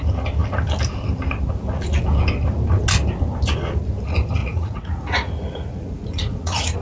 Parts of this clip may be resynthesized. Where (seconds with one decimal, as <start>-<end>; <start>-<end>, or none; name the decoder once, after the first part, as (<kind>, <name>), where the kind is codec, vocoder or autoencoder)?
4.4-6.8 (vocoder, Vocos)